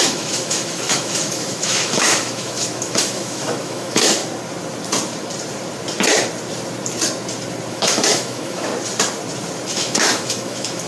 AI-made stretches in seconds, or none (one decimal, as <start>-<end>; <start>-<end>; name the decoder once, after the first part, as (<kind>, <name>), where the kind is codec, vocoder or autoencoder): 0.0-4.2 (autoencoder, DAC-VAE); 7.7-8.7; 9.7-10.9